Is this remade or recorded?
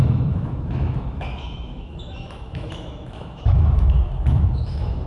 remade